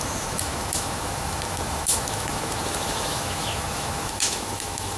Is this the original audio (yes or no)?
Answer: no